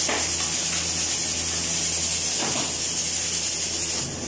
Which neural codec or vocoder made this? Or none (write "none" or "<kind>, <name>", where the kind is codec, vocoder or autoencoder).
none